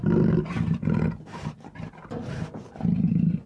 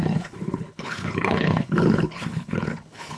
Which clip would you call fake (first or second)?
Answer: second